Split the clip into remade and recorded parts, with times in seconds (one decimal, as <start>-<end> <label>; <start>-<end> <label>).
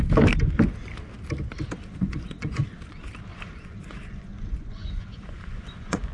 0.0-1.8 recorded; 1.8-2.8 remade; 2.8-3.3 recorded; 3.3-6.1 remade